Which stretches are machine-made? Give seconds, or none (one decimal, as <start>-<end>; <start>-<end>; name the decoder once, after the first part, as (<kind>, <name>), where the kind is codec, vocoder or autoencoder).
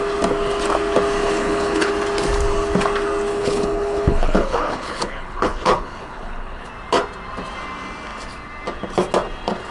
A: 1.2-1.9 (codec, HILCodec); 3.3-6.7